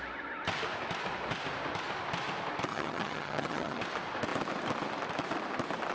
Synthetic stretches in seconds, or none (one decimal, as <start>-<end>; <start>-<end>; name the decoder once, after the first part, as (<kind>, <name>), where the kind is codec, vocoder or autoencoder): 2.7-3.8 (vocoder, HiFi-GAN)